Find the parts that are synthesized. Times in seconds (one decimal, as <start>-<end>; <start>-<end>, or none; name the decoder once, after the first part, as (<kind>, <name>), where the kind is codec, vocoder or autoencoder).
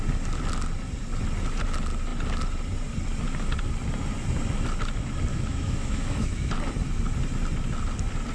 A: 5.3-6.5 (autoencoder, DAC-VAE)